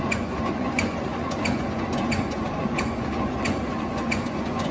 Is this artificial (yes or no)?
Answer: yes